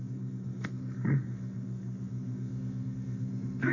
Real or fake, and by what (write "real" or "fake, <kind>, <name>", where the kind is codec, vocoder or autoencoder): fake, codec, SNAC